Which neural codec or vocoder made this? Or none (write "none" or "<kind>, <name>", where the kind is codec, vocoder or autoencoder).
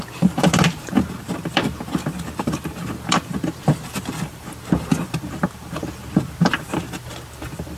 vocoder, BigVGAN v2